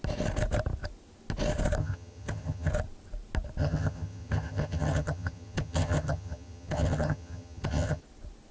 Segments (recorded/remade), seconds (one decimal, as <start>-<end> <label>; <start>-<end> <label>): 0.0-1.8 recorded; 1.8-2.7 remade; 2.7-3.6 recorded; 3.6-8.0 remade; 8.0-8.5 recorded